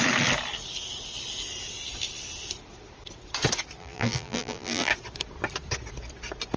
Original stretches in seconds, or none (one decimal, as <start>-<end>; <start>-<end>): 0.0-3.8; 4.9-6.6